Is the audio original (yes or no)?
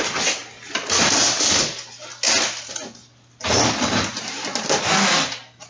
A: yes